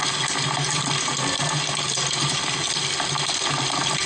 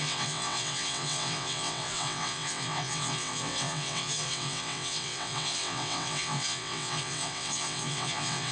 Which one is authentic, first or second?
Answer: first